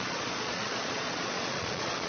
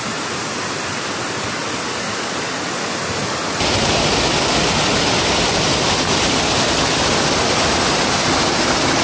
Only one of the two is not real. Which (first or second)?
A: first